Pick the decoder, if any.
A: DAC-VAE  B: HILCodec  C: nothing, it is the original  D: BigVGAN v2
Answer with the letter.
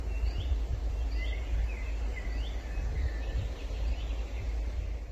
C